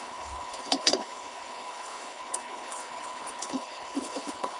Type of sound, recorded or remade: remade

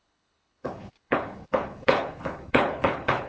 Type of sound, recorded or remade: remade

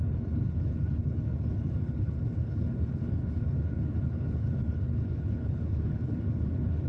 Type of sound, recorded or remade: remade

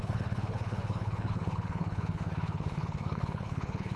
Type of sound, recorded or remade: remade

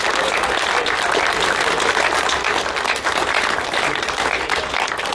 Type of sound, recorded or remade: recorded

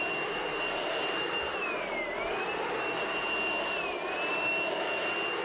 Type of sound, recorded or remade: recorded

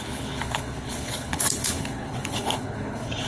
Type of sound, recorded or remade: remade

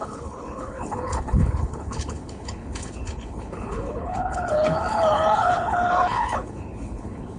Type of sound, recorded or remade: remade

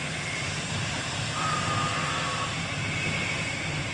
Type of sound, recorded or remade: recorded